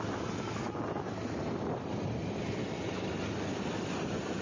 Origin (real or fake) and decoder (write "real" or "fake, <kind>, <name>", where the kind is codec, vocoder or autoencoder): real